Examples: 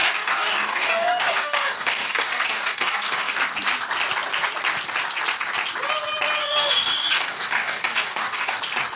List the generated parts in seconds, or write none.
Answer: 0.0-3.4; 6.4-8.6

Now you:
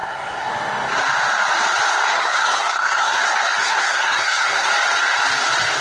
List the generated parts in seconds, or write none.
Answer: 0.0-0.5; 2.1-3.2; 3.6-4.7

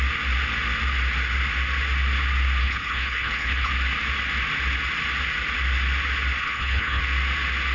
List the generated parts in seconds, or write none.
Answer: 2.6-3.7; 6.4-7.0

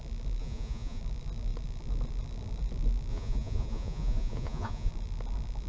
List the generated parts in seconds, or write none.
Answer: 0.4-1.0; 3.1-4.9

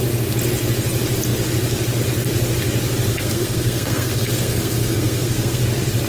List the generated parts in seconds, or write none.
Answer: 3.1-5.6

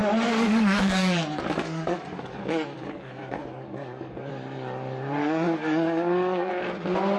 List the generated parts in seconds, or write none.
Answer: 0.0-4.3; 5.2-6.5